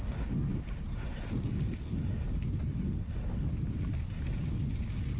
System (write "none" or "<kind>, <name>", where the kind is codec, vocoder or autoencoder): none